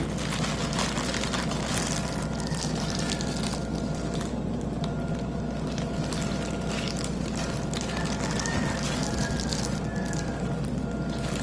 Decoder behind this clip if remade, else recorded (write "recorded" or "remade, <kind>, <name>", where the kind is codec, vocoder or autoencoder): recorded